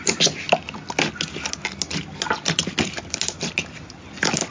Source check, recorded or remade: recorded